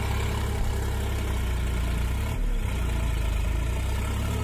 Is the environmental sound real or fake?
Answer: real